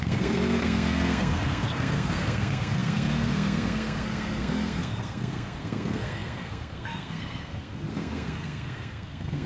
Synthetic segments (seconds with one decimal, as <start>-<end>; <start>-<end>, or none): 0.0-9.5